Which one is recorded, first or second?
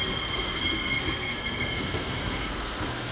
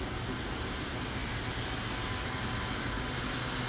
second